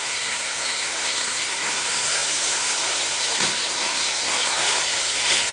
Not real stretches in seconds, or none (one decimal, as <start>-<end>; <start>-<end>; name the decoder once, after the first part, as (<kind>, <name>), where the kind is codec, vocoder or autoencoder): 0.0-5.5 (codec, SNAC)